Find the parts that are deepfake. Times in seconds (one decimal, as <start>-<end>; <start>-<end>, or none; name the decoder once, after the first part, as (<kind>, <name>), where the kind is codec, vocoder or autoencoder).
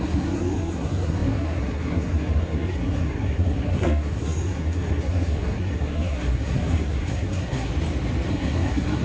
0.0-7.7 (codec, SNAC); 8.3-9.0